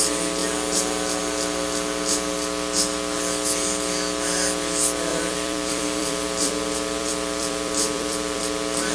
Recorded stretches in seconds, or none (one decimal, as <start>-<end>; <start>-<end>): 0.0-5.1; 8.4-8.9